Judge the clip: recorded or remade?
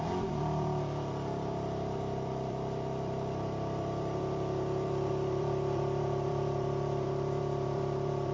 remade